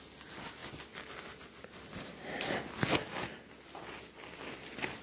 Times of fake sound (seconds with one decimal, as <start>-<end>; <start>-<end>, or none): none